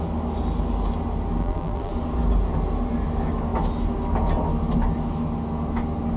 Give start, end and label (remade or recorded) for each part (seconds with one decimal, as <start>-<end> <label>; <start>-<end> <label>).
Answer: 0.0-1.4 recorded; 1.4-1.9 remade; 1.9-6.2 recorded